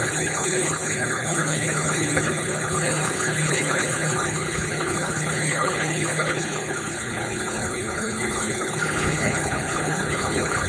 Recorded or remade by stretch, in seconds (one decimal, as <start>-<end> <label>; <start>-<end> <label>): 0.0-10.7 remade